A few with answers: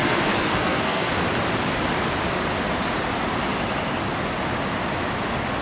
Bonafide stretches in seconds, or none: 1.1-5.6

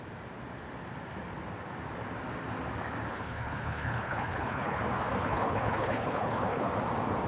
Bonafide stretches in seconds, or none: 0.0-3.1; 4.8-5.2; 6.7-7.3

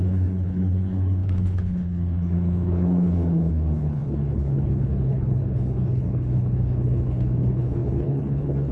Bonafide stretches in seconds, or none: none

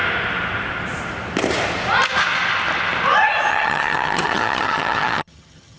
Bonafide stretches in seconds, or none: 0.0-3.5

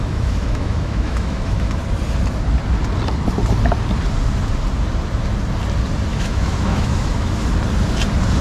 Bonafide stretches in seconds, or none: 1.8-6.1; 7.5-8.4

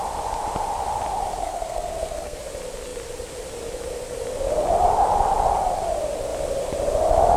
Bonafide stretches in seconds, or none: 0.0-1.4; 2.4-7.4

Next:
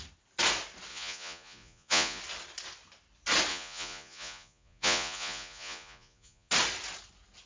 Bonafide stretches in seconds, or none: 0.0-0.9; 2.2-3.5; 6.5-7.5